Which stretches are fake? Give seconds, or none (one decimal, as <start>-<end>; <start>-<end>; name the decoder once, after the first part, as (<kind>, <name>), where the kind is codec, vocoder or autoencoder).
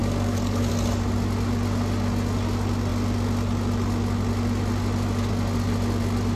0.0-0.7 (codec, DAC)